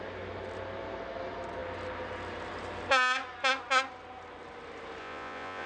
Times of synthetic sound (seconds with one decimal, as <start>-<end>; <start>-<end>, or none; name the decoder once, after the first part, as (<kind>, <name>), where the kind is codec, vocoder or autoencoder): 5.0-5.7 (vocoder, Vocos)